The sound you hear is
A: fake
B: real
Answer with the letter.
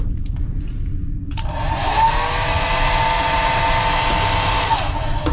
A